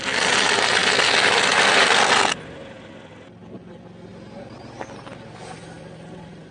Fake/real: real